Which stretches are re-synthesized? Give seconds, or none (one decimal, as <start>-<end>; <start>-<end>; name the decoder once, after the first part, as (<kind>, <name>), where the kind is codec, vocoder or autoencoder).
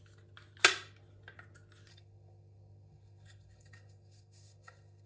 1.9-5.1 (codec, SNAC)